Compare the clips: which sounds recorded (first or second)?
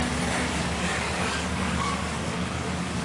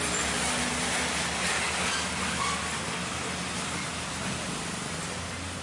second